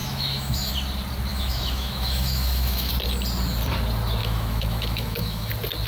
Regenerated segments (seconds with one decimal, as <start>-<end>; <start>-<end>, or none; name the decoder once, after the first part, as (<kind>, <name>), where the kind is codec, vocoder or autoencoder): 0.0-0.7 (autoencoder, DAC-VAE); 1.3-2.9; 4.2-5.5

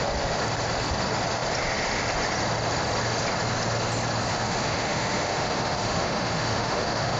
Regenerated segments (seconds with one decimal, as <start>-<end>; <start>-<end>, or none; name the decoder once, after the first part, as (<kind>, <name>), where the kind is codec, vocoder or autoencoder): 4.3-7.2 (autoencoder, DAC-VAE)